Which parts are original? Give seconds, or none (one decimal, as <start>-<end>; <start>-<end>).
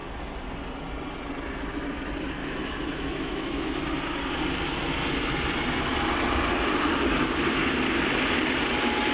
0.0-2.4; 3.8-9.1